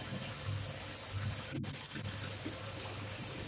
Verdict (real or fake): real